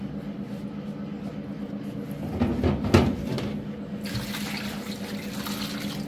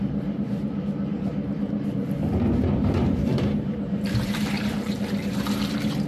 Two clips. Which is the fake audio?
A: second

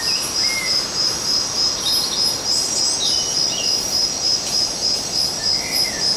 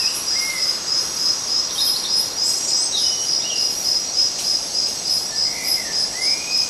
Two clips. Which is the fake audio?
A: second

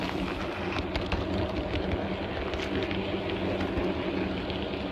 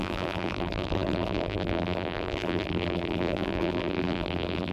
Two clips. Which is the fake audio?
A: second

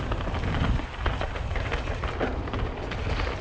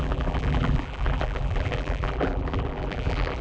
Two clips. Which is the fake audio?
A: second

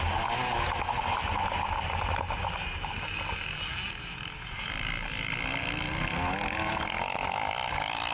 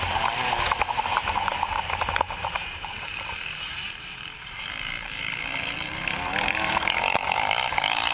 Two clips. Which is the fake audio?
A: second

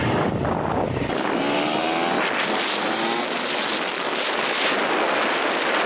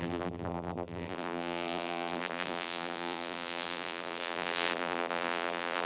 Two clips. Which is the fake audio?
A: second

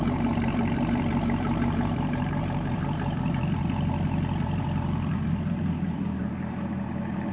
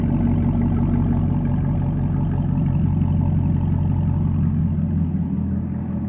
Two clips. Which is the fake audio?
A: first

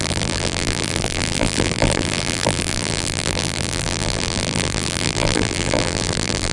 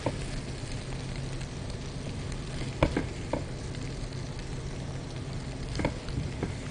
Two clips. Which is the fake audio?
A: first